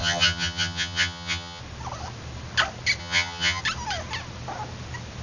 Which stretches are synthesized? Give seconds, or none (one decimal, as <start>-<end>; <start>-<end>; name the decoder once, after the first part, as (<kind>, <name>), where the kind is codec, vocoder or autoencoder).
0.0-1.6 (vocoder, HiFi-GAN); 3.0-3.6